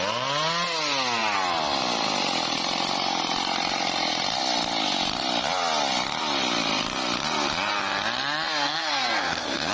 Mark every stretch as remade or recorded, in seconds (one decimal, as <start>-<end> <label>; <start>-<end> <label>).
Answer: 0.0-8.6 recorded; 8.6-9.7 remade